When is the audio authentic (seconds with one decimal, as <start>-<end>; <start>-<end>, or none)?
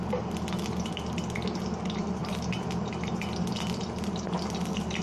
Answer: 0.0-2.2; 2.9-3.5; 4.1-5.0